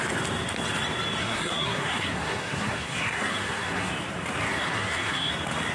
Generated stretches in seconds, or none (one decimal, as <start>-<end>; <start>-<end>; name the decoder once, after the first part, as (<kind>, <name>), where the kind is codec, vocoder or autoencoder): 1.2-3.9 (codec, SNAC); 4.5-5.3